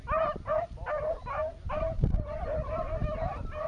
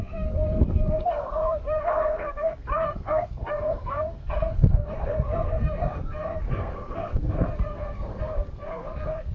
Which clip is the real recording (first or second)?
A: first